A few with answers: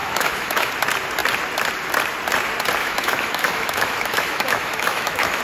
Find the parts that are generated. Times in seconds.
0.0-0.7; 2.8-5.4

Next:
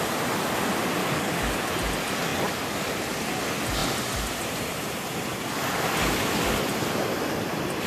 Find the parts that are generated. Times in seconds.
1.0-1.7; 6.0-6.6

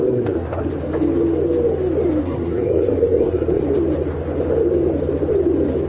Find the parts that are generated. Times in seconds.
0.0-0.7; 2.2-3.6

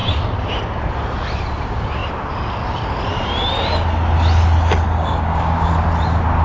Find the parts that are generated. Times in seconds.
5.0-5.7